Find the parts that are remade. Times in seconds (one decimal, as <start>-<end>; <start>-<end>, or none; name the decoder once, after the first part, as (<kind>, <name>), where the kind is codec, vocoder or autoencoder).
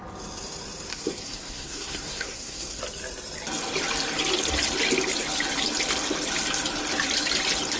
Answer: 0.9-2.8 (codec, SNAC)